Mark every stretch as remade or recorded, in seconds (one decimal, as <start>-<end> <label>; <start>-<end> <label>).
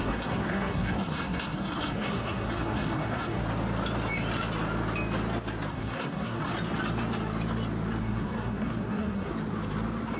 0.0-3.4 remade; 3.4-5.7 recorded; 5.7-6.5 remade; 6.5-8.0 recorded; 8.0-9.3 remade; 9.3-10.2 recorded